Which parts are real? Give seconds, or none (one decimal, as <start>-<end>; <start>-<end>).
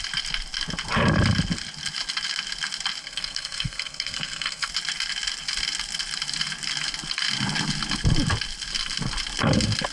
0.0-3.0; 4.7-9.9